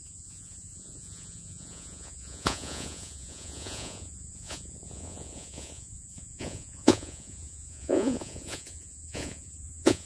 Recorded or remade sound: remade